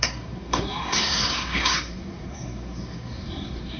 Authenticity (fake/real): fake